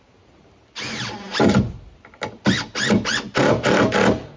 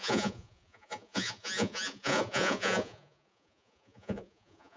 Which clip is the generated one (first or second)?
second